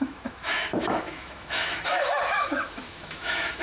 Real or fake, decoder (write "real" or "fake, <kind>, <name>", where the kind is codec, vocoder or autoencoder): fake, autoencoder, DAC-VAE